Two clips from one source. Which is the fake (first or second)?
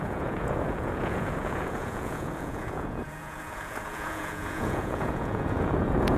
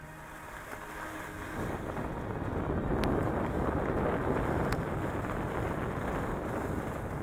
first